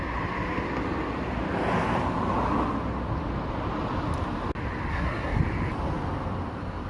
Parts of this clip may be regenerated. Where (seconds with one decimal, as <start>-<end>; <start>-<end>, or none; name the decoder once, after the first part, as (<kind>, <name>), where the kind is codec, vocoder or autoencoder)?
4.9-5.4 (codec, SNAC)